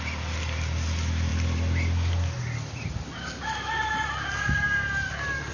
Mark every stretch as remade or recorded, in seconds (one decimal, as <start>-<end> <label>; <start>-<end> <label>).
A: 0.0-5.5 recorded